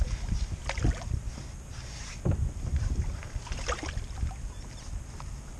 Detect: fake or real real